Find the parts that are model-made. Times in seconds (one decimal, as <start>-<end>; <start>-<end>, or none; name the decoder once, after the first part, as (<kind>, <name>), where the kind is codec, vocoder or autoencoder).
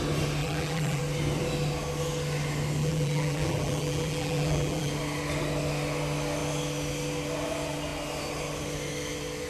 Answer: 0.4-1.0 (vocoder, BigVGAN v2); 2.8-4.9